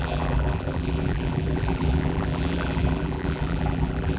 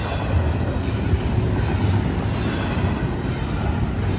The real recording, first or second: second